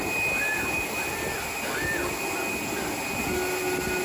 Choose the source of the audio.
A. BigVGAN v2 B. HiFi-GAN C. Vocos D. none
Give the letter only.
D